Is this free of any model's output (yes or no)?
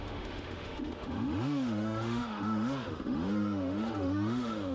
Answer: no